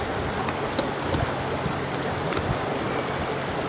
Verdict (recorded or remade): recorded